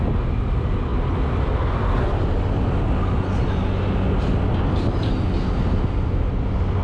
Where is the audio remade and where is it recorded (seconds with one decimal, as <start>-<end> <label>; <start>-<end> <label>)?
0.0-6.8 recorded